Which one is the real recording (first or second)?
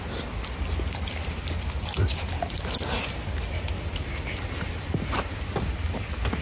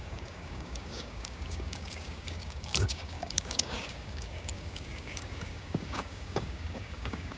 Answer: first